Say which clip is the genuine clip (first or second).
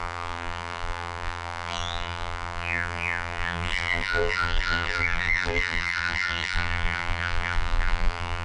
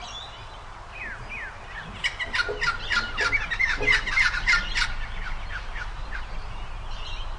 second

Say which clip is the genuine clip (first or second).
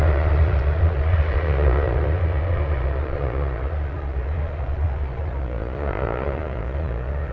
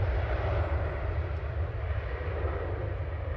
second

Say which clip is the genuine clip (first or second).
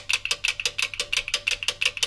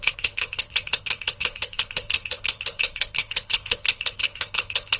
first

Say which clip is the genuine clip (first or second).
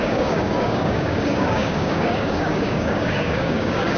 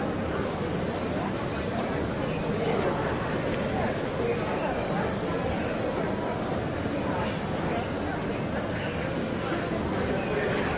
second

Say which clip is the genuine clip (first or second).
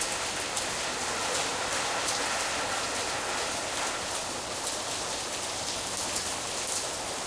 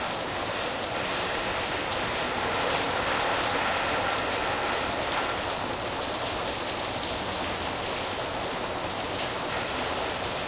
first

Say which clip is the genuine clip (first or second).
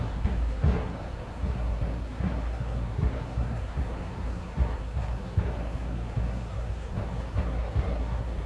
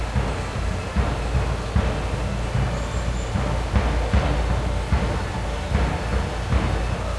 second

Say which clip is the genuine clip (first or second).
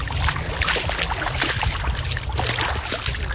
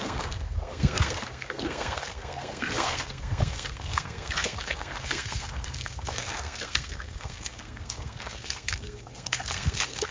first